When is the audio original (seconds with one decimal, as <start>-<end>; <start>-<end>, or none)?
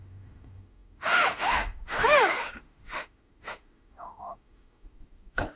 none